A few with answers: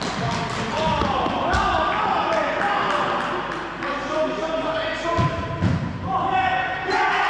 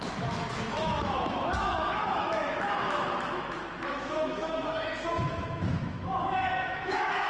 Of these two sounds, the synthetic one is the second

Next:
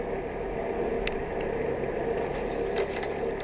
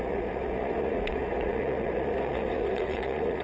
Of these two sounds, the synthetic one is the second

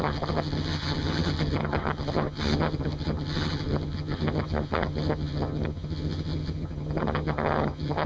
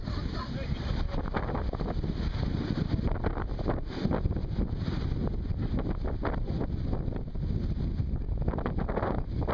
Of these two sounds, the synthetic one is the first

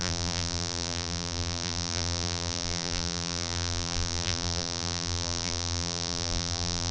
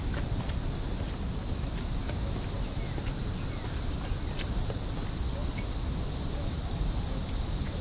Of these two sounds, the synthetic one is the first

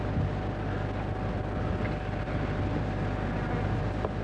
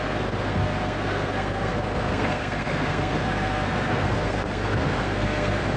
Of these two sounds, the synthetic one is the second